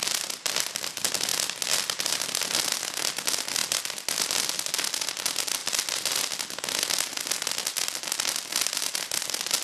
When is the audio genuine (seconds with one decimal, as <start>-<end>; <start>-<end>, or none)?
0.0-1.3; 2.8-5.6; 6.6-8.5; 9.1-9.6

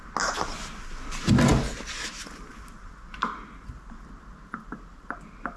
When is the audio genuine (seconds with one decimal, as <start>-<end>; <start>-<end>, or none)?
0.0-5.6

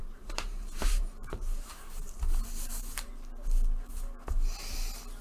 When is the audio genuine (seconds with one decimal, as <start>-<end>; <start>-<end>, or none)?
3.1-5.2

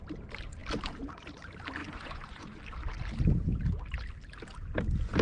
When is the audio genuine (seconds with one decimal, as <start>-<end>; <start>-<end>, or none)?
0.0-1.8; 2.6-5.2

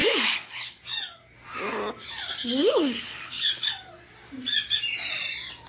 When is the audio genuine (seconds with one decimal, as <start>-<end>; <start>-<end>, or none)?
0.8-2.6; 3.7-5.7

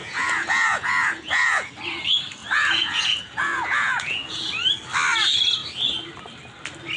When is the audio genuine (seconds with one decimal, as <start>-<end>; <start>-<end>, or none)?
1.7-2.4; 4.5-7.0